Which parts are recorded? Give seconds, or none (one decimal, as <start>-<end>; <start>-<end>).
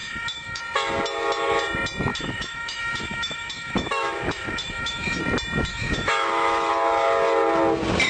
0.6-2.1; 5.2-5.7; 6.7-8.1